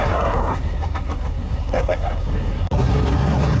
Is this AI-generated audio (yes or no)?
yes